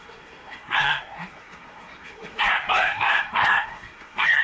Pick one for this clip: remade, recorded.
remade